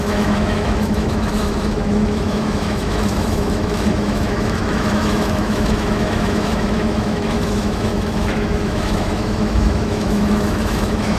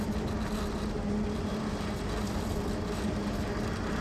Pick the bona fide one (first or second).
second